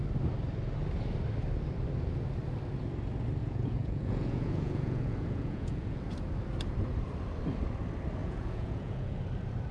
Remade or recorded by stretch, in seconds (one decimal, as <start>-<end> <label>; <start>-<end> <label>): 0.0-3.4 recorded; 3.4-6.0 remade; 6.0-8.2 recorded; 8.2-9.2 remade; 9.2-9.7 recorded